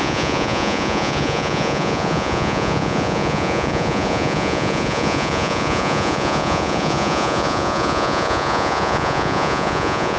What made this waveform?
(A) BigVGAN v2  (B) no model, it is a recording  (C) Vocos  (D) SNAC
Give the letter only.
C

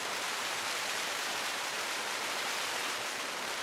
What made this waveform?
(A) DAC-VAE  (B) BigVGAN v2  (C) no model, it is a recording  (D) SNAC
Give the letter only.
B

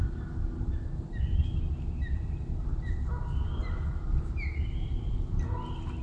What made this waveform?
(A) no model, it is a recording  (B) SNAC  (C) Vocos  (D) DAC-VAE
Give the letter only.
A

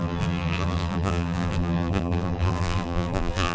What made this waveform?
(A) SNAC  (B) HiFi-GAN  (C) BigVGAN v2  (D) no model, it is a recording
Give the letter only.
C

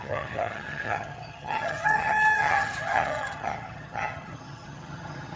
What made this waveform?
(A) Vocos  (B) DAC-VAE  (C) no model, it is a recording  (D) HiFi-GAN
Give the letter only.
D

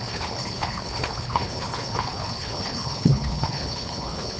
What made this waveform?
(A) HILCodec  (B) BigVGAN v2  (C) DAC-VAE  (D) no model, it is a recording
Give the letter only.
A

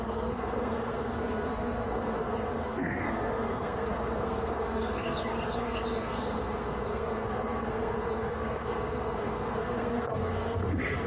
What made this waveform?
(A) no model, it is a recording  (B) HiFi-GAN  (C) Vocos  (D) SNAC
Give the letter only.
D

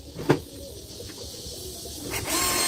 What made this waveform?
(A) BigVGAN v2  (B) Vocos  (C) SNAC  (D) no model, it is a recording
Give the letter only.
D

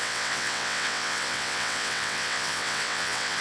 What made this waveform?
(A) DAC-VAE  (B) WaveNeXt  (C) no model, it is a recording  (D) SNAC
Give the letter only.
B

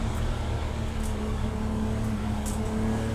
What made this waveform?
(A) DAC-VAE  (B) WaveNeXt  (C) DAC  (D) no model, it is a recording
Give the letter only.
C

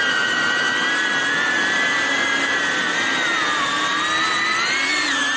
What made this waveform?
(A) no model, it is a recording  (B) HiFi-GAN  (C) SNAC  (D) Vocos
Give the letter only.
A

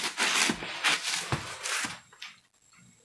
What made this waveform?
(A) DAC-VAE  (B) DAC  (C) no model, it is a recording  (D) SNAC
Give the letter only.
C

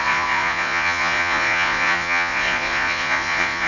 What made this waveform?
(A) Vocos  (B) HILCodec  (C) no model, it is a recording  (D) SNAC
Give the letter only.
A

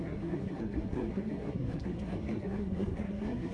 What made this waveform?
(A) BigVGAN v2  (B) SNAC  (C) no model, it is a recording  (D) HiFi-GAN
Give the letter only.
B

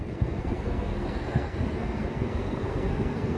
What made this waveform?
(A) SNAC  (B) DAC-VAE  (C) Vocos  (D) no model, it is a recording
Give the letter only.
A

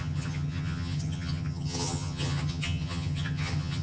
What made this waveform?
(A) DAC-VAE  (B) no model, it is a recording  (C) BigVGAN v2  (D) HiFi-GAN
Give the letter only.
D